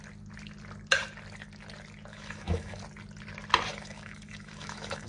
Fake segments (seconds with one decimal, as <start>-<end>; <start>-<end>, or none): 2.1-2.8; 3.7-5.1